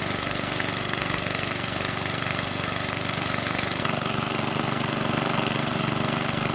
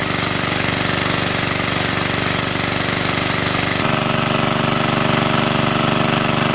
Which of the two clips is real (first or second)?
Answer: second